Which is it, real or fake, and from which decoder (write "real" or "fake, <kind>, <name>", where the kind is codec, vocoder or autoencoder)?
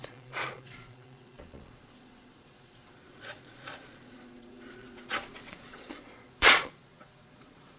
fake, vocoder, Vocos